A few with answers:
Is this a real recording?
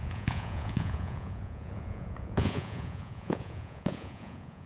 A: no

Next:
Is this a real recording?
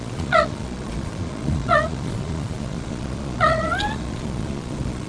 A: no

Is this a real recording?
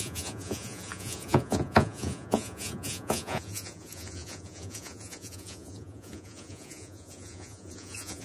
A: no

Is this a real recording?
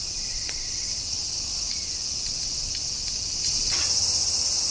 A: yes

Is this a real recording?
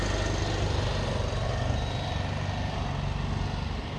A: yes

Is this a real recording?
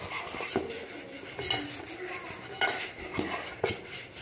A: yes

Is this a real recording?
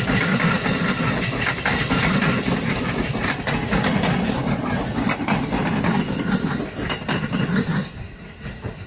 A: yes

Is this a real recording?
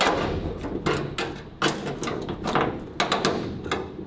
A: yes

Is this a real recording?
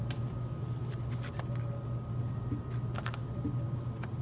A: yes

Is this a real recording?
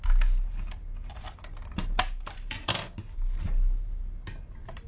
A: yes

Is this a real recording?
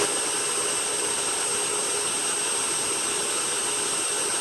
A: yes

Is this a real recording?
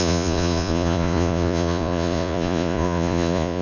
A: no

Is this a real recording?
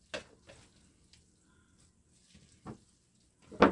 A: yes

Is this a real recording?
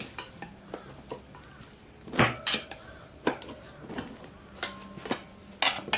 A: yes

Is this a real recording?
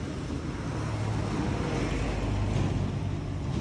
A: yes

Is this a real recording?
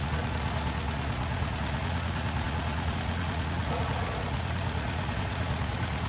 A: no